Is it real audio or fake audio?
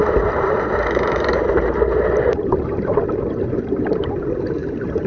fake